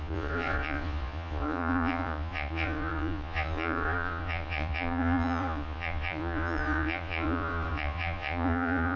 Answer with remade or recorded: remade